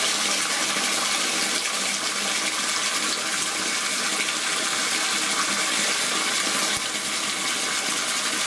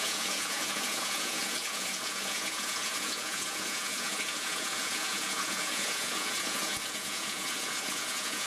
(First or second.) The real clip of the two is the first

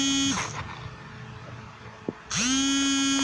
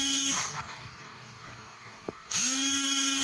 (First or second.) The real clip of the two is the first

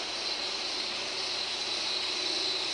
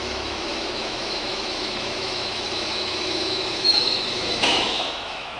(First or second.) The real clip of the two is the first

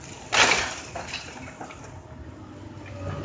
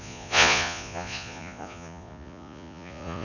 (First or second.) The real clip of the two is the first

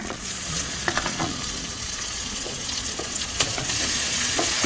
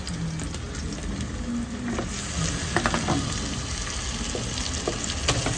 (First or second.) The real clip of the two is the second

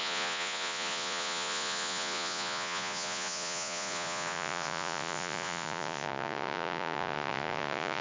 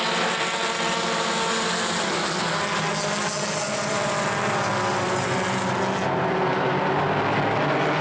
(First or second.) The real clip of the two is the second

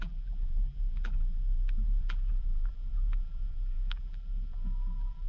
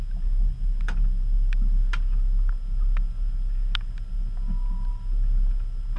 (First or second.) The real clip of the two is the second